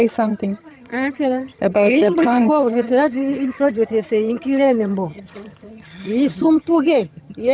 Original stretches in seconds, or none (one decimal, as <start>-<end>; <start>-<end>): none